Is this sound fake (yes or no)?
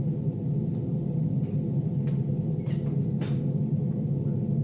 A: no